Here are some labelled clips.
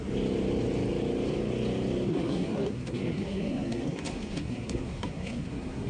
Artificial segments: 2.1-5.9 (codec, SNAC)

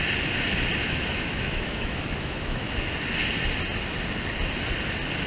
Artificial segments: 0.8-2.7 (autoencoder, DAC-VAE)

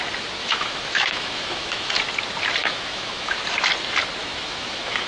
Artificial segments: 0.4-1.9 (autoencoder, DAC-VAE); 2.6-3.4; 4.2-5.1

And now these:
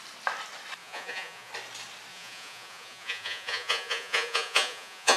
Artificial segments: 0.8-1.5 (vocoder, Vocos); 2.1-5.2

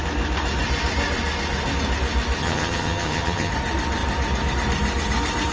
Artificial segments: 2.4-3.5 (vocoder, HiFi-GAN)

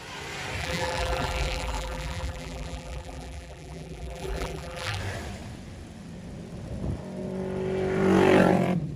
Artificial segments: 0.6-5.0 (vocoder, BigVGAN v2)

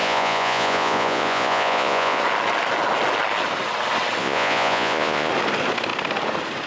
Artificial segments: 0.0-2.2 (vocoder, Vocos); 4.2-5.3

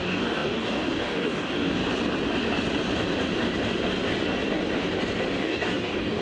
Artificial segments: 0.0-1.8 (codec, DAC); 5.4-6.2